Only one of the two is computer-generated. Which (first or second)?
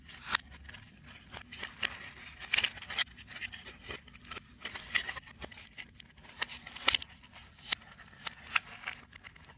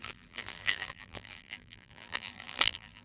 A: second